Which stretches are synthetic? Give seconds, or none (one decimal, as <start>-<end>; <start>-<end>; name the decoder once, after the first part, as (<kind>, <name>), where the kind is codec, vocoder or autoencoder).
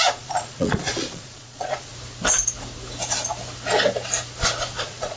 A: 0.0-1.9 (vocoder, Vocos); 4.8-5.2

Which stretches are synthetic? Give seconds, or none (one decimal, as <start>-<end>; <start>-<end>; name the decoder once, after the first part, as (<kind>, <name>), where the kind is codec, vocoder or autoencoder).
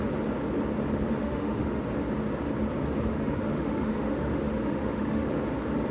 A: 1.2-1.8 (autoencoder, DAC-VAE); 3.1-5.3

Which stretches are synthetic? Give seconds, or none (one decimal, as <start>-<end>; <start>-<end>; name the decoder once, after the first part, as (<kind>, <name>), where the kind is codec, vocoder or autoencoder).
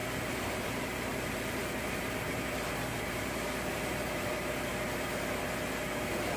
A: 0.0-3.8 (vocoder, BigVGAN v2); 4.7-5.4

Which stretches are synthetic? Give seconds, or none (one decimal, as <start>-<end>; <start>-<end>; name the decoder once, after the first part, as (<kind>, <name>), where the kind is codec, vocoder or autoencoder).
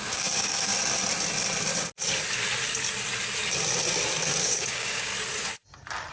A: 0.0-0.7 (codec, DAC); 4.4-5.1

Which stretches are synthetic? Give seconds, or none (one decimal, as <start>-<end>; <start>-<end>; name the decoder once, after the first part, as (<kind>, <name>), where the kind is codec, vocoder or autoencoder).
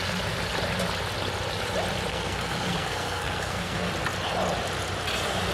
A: 2.1-3.9 (codec, SNAC)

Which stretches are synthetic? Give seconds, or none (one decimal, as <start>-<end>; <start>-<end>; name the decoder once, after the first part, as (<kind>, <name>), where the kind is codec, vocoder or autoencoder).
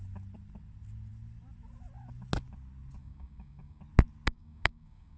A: 3.0-3.8 (codec, DAC); 4.3-5.2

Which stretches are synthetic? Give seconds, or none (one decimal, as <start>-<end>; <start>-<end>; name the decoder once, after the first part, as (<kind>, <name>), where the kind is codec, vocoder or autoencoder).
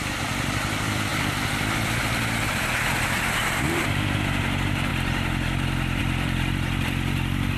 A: 0.0-4.9 (vocoder, BigVGAN v2); 6.0-7.6